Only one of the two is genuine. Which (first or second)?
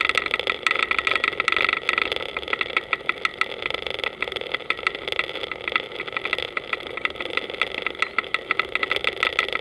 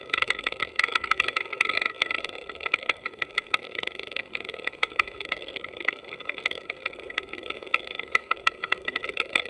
first